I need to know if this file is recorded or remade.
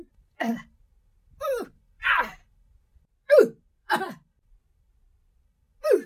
remade